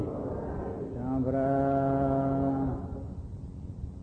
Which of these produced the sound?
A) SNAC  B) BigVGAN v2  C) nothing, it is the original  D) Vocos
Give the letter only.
C